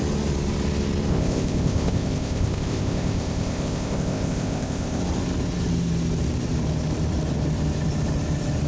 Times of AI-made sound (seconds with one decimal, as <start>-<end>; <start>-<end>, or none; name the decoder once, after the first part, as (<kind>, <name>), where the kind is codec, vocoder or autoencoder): 1.1-5.0 (codec, ZipCodec)